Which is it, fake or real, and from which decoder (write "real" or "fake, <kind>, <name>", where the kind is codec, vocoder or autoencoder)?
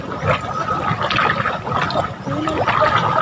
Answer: real